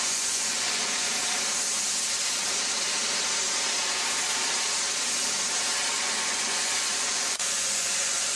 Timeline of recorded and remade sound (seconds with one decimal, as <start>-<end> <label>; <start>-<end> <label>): 0.0-1.1 remade; 1.1-5.9 recorded; 5.9-8.4 remade